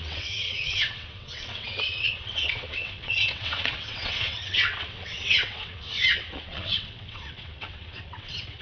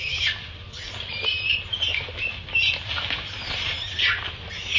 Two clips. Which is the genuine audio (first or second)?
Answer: second